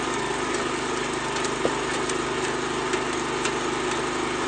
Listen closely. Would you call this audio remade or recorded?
recorded